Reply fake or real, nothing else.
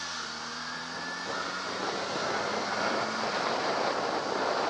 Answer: real